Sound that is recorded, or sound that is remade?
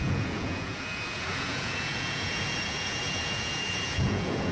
remade